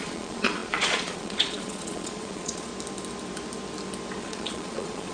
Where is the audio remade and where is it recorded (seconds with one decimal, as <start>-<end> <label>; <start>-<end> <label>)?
0.0-2.7 remade; 2.7-4.2 recorded; 4.2-5.1 remade